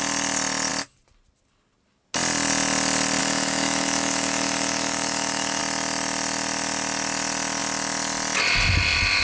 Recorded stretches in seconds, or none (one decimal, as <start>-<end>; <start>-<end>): 0.0-3.2; 5.6-9.2